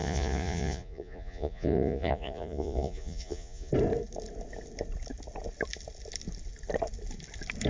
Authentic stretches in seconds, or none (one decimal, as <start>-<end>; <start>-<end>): 3.7-7.7